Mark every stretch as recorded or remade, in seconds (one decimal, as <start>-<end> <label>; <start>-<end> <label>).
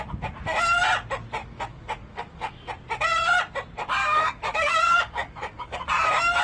0.0-1.4 recorded; 1.4-2.7 remade; 2.7-4.0 recorded; 4.0-5.8 remade; 5.8-6.4 recorded